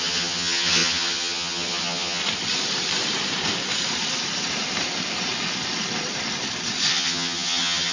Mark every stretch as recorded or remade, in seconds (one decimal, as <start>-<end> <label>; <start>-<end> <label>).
0.0-2.2 remade; 2.2-6.9 recorded; 6.9-7.9 remade